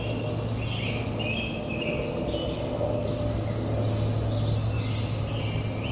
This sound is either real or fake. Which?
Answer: real